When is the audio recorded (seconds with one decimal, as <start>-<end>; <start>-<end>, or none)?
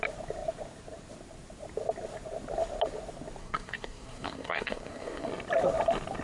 0.0-3.4; 5.3-6.2